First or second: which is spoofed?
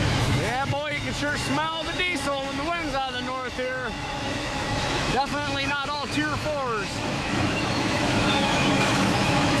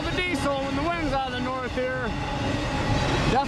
first